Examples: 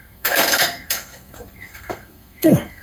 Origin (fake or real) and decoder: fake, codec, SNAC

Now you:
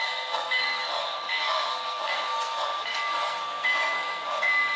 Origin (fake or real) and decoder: fake, codec, SNAC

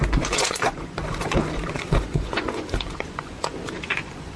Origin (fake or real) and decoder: fake, vocoder, Vocos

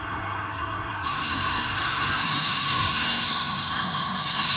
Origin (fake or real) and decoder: fake, codec, SNAC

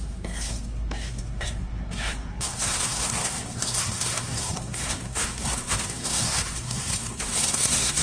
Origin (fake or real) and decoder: fake, codec, SNAC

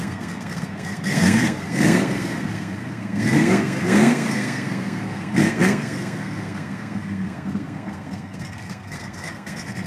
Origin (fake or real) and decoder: fake, codec, SNAC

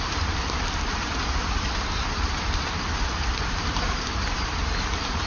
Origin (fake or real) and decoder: fake, vocoder, BigVGAN v2